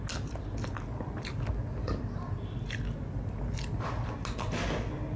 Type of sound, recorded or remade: recorded